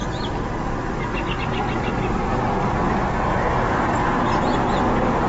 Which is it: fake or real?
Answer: real